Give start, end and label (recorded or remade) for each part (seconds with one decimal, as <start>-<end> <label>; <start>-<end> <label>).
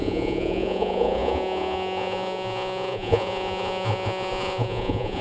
0.0-5.2 remade